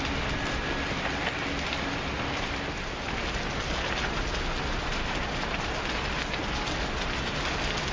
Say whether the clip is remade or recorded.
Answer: recorded